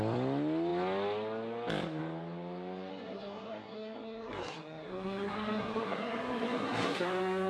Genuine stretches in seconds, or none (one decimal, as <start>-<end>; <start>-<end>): 0.0-2.9